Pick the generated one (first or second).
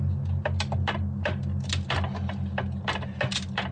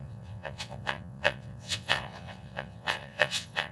second